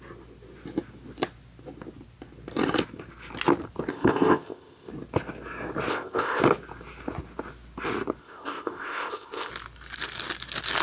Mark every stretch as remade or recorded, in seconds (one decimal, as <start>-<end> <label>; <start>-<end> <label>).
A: 0.0-3.9 recorded; 3.9-4.9 remade; 4.9-5.9 recorded; 5.9-6.4 remade; 6.4-8.2 recorded; 8.2-9.5 remade; 9.5-10.8 recorded